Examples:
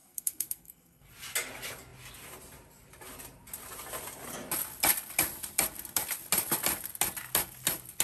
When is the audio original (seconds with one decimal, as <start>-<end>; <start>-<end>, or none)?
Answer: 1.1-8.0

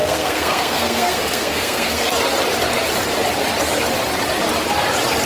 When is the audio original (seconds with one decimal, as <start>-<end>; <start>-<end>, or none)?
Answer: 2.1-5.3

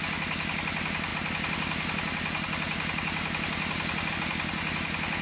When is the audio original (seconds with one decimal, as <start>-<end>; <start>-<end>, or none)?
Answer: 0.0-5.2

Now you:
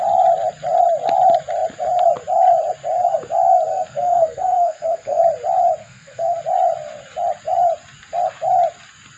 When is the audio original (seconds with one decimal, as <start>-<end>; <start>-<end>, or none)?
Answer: 0.0-3.7; 5.2-5.8; 6.4-9.2